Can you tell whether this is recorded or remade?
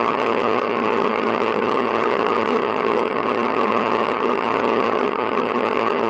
remade